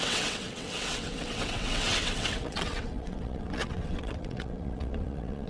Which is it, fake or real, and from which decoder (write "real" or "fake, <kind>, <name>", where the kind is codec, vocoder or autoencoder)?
fake, vocoder, WaveNeXt